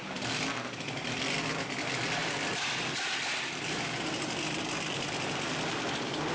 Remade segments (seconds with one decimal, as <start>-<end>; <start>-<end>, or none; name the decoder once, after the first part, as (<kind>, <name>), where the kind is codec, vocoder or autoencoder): 2.2-6.3 (vocoder, BigVGAN v2)